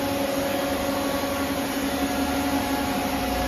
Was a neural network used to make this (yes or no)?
no